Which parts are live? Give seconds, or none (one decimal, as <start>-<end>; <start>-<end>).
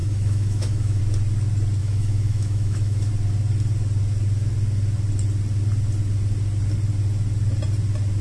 1.0-1.8; 3.1-8.2